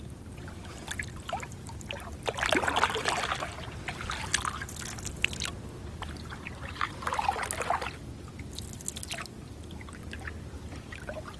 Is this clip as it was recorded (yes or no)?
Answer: yes